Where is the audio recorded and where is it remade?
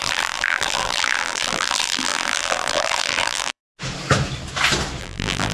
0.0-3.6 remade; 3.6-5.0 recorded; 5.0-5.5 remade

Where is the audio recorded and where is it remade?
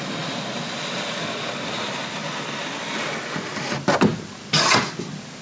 0.0-5.4 recorded